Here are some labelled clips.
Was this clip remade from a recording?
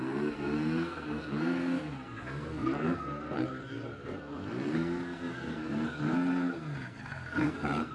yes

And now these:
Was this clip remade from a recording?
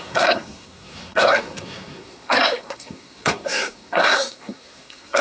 yes